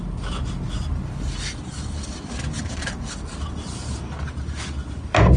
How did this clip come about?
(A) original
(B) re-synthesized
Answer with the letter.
A